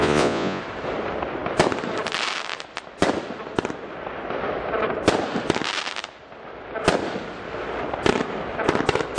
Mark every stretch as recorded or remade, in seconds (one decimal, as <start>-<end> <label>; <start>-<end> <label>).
0.0-0.6 remade; 0.6-9.2 recorded